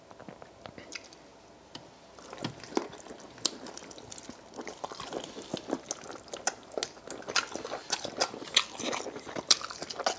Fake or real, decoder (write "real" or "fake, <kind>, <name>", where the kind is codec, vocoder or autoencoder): real